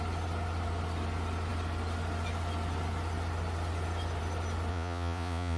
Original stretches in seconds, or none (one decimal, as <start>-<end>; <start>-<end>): 0.0-4.7